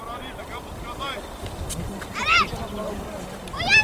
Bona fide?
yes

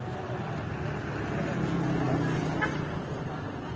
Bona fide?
yes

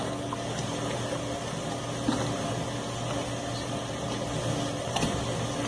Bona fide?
yes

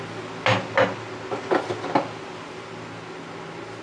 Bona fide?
yes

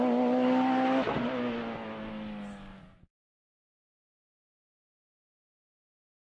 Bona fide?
yes